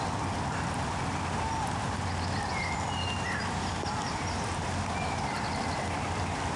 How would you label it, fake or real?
real